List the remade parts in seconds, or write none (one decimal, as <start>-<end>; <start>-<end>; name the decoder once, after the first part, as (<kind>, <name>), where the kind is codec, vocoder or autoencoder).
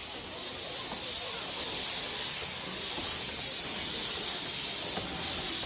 none